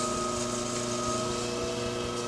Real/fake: real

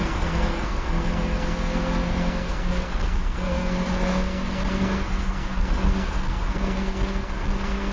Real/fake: fake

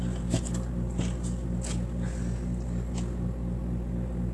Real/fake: real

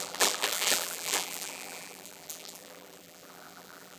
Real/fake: fake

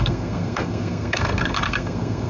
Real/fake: fake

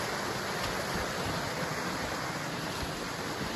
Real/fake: real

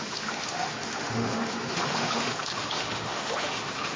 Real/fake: fake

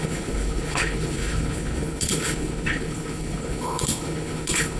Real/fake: fake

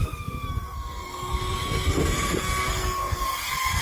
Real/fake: fake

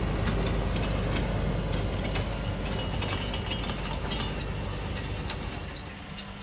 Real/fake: real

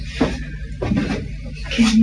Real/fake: real